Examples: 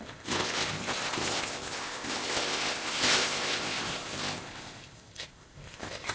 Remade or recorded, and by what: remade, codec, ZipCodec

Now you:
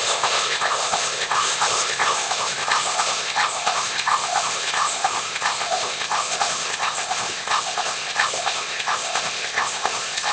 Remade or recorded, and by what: remade, codec, ZipCodec